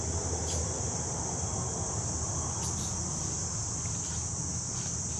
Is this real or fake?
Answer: real